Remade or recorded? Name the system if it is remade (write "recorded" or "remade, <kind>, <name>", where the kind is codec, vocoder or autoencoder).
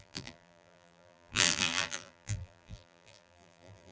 remade, vocoder, BigVGAN v2